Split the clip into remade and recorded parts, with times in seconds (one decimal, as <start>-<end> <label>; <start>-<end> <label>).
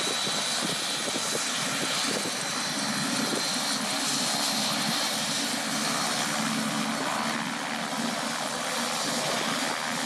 0.0-10.1 recorded